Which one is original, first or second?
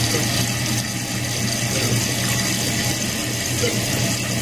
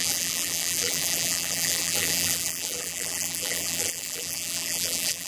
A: first